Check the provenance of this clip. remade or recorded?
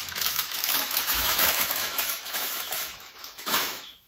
remade